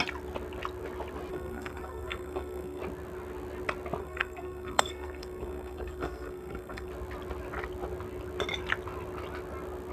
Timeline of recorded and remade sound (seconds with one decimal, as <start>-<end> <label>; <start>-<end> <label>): 0.0-1.3 recorded; 1.3-2.8 remade; 2.8-4.0 recorded; 4.0-6.9 remade; 6.9-9.9 recorded

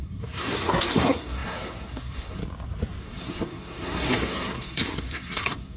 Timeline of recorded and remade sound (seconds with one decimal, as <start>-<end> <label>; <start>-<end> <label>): 0.0-2.4 remade; 2.4-3.0 recorded; 3.0-5.8 remade

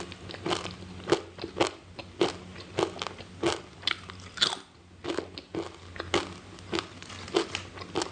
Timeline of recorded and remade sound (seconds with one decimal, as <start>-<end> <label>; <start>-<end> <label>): 0.0-8.1 recorded

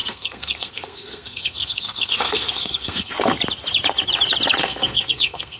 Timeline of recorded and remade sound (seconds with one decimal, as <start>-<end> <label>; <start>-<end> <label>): 0.0-3.1 remade; 3.1-4.6 recorded; 4.6-5.6 remade

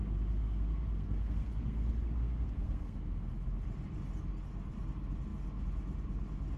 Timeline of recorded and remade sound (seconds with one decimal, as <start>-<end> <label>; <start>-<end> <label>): 0.0-0.4 recorded; 0.4-3.3 remade; 3.3-6.6 recorded

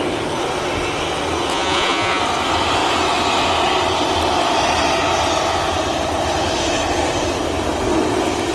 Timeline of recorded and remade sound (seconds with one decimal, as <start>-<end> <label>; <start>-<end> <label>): 0.0-1.5 recorded; 1.5-2.2 remade; 2.2-8.5 recorded

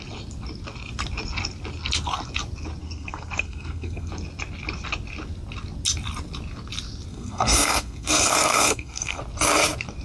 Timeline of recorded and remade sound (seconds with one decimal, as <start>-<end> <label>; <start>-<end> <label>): 0.0-2.8 recorded; 2.8-4.1 remade; 4.1-7.1 recorded; 7.1-9.2 remade; 9.2-10.0 recorded